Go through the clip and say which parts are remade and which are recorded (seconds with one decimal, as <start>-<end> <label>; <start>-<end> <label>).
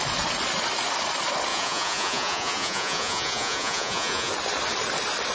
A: 0.0-1.5 recorded; 1.5-4.3 remade; 4.3-5.3 recorded